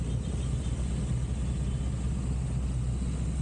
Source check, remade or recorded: recorded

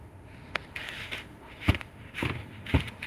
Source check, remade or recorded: remade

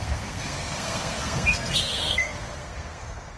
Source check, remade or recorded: remade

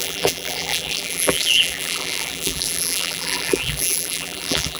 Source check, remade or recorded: remade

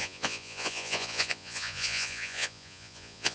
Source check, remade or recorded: remade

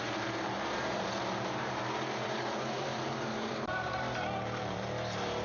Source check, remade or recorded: remade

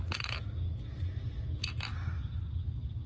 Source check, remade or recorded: recorded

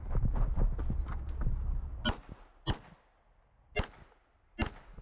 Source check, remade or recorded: recorded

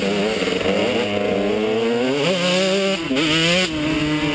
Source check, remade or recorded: recorded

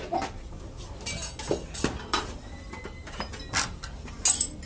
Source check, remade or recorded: recorded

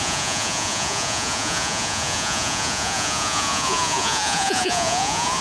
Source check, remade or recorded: remade